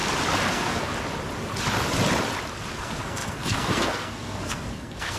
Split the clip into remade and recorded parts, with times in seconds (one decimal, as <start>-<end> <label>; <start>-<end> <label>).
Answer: 0.0-0.5 recorded; 0.5-0.9 remade; 0.9-2.7 recorded; 2.7-5.2 remade